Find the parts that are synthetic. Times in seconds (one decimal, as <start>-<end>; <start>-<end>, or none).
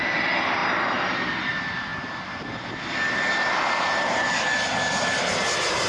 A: none